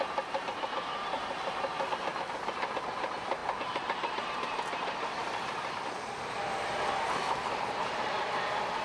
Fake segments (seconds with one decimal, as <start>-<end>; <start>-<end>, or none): 0.0-8.8